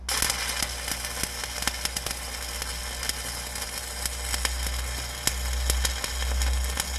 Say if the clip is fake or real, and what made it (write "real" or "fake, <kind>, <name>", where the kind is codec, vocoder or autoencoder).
real